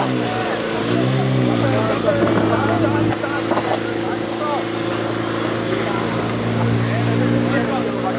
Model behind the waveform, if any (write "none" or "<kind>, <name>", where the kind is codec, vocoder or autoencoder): none